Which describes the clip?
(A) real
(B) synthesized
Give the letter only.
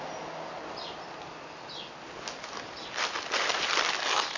A